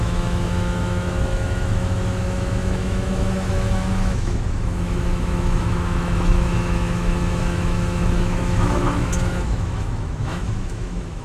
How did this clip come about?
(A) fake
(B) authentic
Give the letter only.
A